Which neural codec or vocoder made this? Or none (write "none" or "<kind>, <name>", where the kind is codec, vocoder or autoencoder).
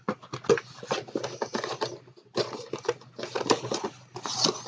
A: none